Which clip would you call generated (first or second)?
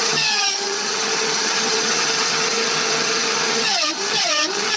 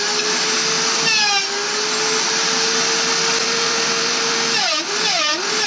first